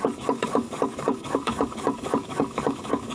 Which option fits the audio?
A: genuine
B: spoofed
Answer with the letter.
B